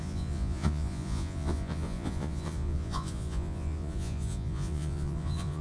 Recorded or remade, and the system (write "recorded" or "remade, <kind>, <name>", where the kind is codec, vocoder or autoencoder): remade, vocoder, Vocos